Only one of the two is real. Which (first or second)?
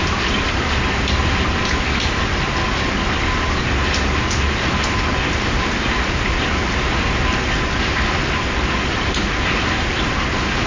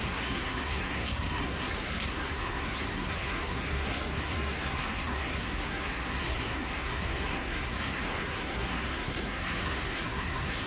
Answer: first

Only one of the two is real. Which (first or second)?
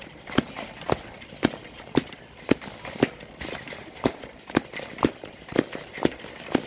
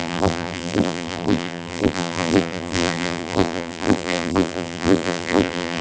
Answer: first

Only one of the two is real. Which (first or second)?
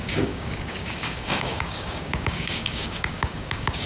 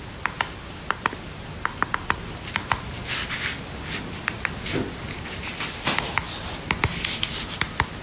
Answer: second